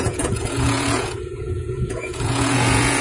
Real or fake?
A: fake